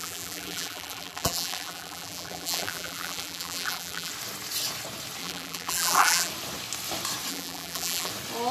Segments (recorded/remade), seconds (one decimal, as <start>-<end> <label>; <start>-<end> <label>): 0.0-4.1 remade; 4.1-5.2 recorded; 5.2-6.3 remade; 6.3-7.3 recorded; 7.3-8.1 remade; 8.1-8.5 recorded